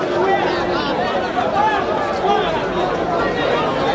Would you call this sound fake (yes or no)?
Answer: no